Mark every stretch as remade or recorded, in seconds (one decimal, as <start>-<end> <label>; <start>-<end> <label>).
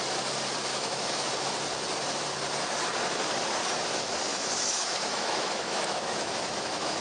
0.0-0.7 recorded; 0.7-1.3 remade; 1.3-4.3 recorded; 4.3-7.0 remade